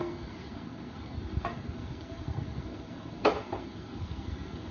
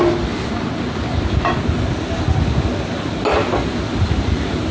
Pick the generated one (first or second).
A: first